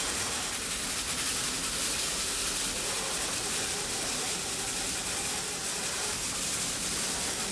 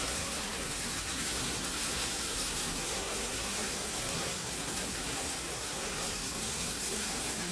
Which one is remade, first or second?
second